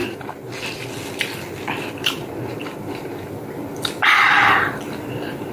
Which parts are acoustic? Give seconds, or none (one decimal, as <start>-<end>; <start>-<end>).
0.0-5.5